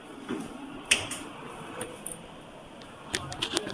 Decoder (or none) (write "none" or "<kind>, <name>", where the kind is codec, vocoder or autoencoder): vocoder, BigVGAN v2